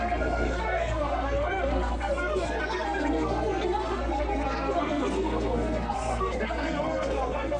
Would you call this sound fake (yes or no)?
yes